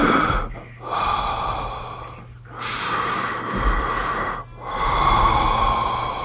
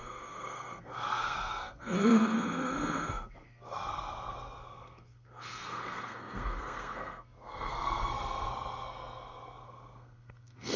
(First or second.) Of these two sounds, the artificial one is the second